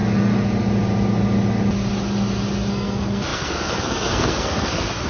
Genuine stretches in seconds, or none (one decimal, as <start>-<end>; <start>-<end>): 0.0-2.7